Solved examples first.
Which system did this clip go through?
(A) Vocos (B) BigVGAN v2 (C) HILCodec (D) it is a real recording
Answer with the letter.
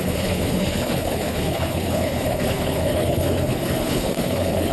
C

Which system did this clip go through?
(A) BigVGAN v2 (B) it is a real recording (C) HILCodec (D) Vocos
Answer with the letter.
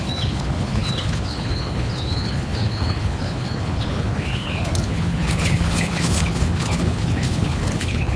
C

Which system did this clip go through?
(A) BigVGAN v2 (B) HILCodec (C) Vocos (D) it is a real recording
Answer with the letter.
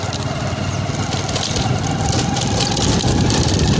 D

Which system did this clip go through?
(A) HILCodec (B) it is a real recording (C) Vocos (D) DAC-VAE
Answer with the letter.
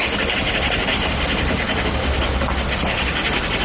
B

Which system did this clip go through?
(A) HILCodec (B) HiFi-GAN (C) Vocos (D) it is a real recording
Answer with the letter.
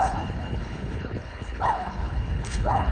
A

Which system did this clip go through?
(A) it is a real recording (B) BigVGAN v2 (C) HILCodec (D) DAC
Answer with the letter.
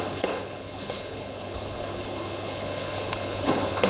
C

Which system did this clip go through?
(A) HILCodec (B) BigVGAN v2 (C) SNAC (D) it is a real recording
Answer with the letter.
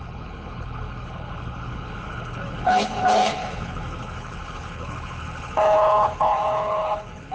A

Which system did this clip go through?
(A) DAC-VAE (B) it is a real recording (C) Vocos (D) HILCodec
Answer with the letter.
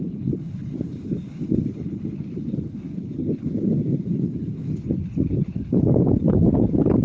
D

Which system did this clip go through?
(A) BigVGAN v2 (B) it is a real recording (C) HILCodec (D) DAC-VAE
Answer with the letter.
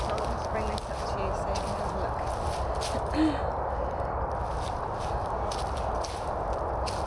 B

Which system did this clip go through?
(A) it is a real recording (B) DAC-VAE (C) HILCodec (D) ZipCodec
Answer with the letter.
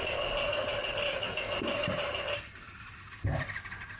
A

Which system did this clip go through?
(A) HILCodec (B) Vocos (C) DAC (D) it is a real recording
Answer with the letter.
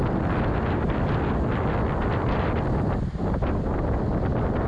D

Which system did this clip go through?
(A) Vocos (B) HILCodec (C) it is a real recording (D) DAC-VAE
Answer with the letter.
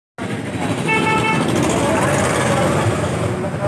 C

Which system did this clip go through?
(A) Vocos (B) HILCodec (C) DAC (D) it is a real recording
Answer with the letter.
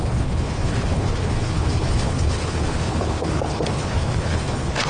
B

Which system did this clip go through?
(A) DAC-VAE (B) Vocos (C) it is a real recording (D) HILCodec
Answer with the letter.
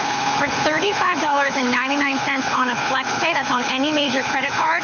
D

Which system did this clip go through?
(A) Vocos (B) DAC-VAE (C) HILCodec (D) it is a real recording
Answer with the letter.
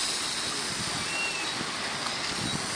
D